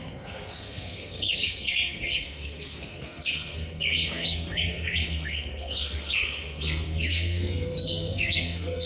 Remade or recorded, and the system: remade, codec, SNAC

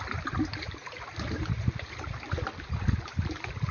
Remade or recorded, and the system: recorded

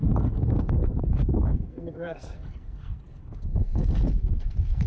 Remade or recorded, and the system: remade, codec, SNAC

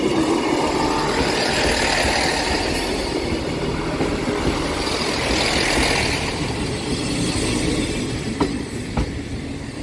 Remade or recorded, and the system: recorded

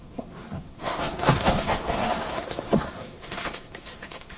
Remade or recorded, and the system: remade, codec, SNAC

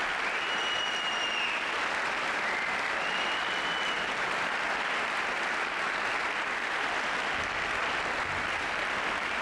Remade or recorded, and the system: recorded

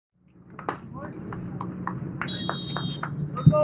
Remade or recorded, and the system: recorded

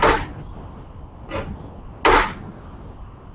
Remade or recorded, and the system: recorded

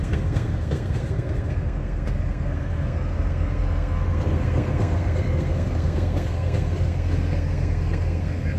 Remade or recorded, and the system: remade, codec, SNAC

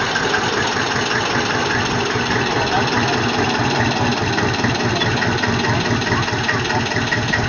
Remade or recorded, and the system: recorded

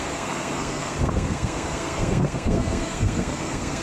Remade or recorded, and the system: remade, codec, SNAC